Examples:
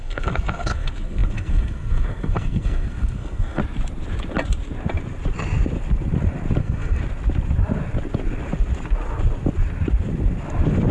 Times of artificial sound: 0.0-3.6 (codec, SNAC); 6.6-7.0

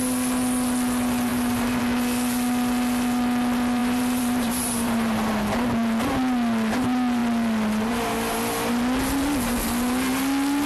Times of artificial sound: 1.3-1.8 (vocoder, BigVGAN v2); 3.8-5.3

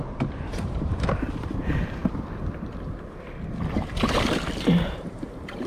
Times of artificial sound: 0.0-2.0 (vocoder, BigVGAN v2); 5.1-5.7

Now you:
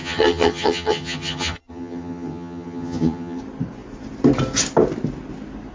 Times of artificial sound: 0.0-3.4 (vocoder, HiFi-GAN)

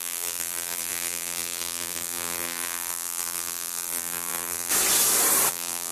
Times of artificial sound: 0.0-4.7 (vocoder, BigVGAN v2); 5.5-5.9

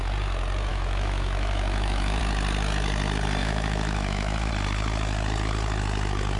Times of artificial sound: 0.7-2.2 (autoencoder, DAC-VAE); 3.4-4.5